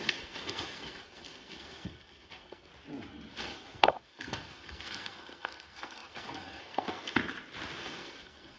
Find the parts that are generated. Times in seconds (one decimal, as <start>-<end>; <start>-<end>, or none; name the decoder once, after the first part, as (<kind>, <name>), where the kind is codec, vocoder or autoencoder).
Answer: 0.0-2.7 (codec, SNAC); 3.3-7.2; 7.8-8.6